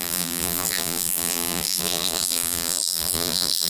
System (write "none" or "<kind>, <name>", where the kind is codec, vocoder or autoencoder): vocoder, BigVGAN v2